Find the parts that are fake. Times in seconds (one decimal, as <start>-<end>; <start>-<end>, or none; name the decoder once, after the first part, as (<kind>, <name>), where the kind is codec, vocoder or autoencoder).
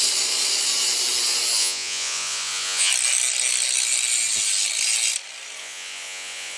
1.6-2.9 (vocoder, Vocos); 5.6-6.6